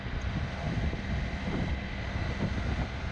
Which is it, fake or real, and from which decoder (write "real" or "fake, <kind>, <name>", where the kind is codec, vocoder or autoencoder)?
real